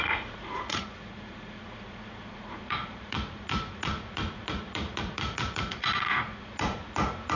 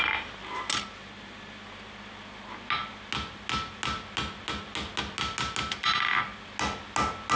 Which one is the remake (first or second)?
first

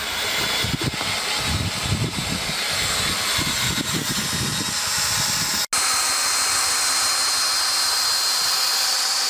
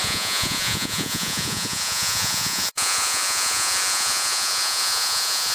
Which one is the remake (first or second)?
second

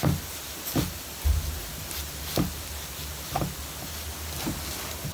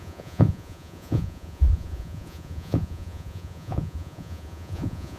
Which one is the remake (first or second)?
second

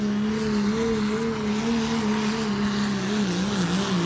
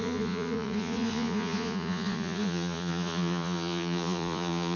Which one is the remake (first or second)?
second